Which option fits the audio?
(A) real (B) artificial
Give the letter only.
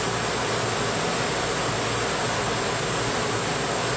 A